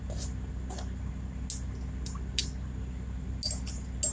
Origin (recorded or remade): recorded